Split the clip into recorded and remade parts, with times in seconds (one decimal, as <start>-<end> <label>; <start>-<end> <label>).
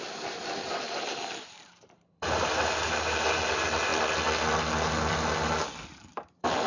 0.0-3.9 remade; 3.9-6.1 recorded; 6.1-6.7 remade